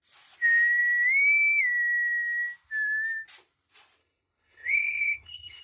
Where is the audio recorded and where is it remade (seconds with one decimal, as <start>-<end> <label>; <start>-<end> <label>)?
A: 0.0-4.0 recorded; 4.0-5.6 remade

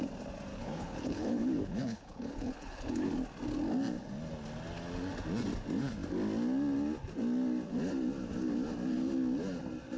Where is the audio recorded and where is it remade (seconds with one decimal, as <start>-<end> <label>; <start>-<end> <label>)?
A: 0.0-0.5 recorded; 0.5-3.1 remade; 3.1-10.0 recorded